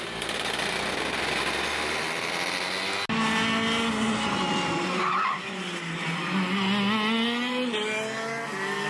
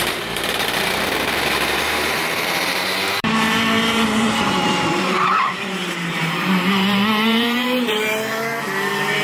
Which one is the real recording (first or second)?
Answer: first